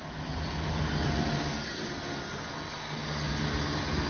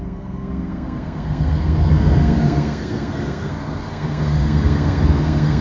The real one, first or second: first